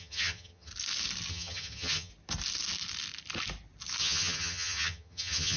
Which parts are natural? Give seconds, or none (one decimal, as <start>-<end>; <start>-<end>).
0.7-1.3; 2.1-4.0